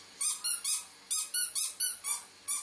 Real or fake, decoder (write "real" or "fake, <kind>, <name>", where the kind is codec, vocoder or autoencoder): real